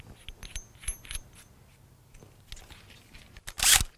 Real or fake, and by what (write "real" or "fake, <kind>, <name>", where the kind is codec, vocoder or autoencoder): real